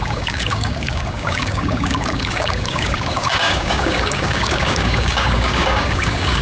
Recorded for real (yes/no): no